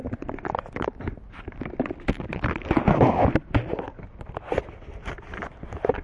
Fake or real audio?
real